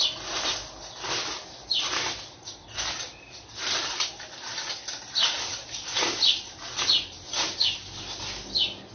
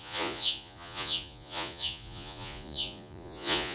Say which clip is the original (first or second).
first